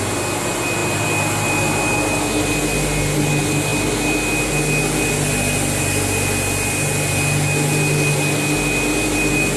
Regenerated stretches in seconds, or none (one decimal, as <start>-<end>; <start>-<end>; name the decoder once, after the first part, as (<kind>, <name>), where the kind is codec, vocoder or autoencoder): none